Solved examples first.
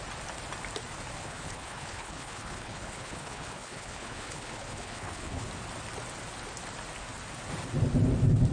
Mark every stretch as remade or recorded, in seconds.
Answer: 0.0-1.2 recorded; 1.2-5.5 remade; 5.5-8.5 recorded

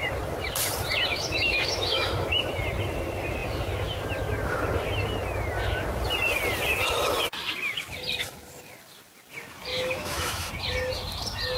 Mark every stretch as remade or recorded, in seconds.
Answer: 0.0-1.1 recorded; 1.1-2.1 remade; 2.1-9.7 recorded; 9.7-10.5 remade; 10.5-11.6 recorded

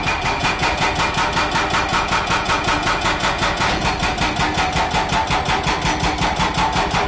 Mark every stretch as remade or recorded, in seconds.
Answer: 0.0-0.4 recorded; 0.4-0.9 remade; 0.9-1.9 recorded; 1.9-3.9 remade; 3.9-7.1 recorded